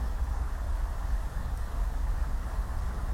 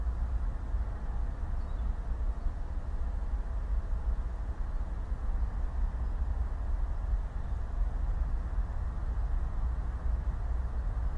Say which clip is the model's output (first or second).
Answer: first